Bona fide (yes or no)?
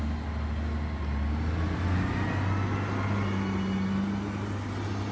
yes